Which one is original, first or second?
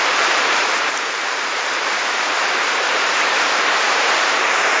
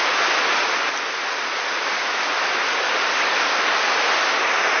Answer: second